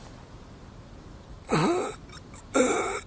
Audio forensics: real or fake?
real